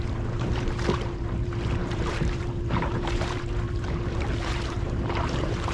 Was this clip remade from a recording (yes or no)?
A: yes